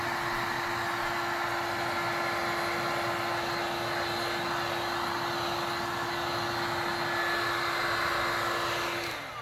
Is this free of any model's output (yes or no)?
yes